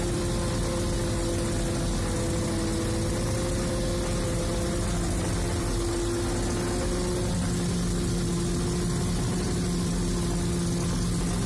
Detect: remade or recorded recorded